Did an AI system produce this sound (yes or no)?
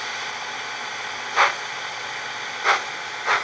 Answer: no